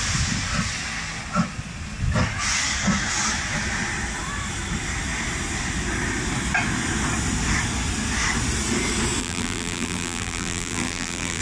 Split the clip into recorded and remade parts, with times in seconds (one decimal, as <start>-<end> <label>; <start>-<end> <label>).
0.0-9.2 recorded; 9.2-11.4 remade